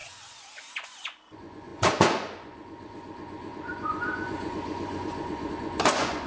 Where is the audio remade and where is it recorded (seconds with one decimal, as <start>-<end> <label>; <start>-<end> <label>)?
0.0-6.3 remade